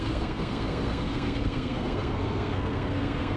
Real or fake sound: fake